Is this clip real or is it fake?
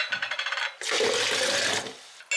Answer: real